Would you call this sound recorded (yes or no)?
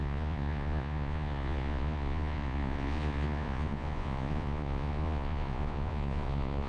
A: no